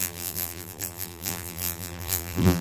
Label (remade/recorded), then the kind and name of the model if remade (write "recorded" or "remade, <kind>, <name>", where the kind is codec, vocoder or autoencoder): remade, vocoder, BigVGAN v2